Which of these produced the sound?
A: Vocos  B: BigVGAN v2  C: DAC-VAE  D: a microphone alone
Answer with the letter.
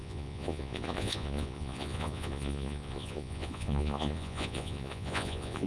A